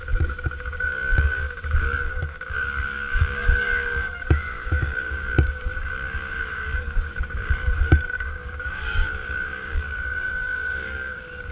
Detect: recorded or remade remade